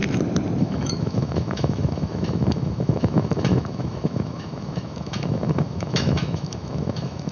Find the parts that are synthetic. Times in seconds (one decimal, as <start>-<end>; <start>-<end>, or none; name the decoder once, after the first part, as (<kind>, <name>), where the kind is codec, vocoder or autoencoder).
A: 0.6-7.3 (autoencoder, DAC-VAE)